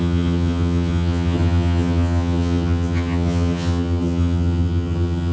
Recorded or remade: remade